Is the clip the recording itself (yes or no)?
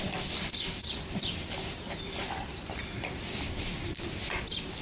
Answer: no